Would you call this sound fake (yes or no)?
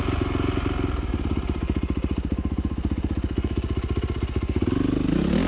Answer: no